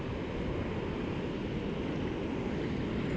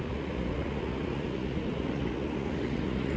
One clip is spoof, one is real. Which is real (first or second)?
first